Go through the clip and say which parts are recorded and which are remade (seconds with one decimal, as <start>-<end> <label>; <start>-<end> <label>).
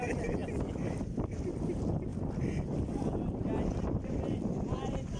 0.0-2.1 recorded; 2.1-5.2 remade